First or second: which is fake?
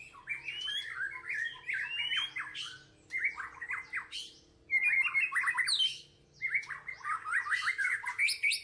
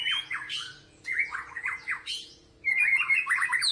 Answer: second